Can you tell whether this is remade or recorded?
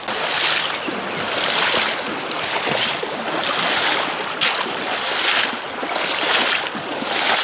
recorded